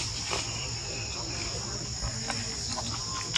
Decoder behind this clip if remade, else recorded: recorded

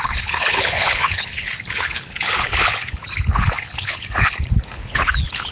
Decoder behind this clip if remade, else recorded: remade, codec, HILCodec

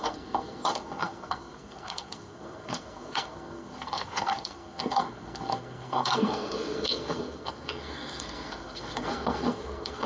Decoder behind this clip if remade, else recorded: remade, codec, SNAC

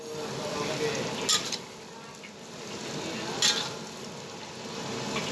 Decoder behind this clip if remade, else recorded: recorded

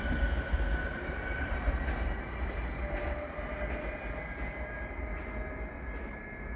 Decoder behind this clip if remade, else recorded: recorded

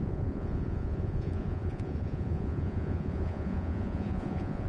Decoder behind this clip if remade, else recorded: remade, vocoder, Vocos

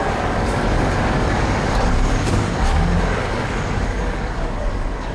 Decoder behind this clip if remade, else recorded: remade, codec, DAC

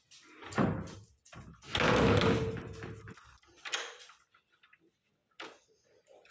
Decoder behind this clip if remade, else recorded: recorded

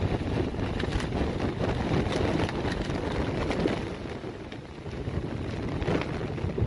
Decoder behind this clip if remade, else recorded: recorded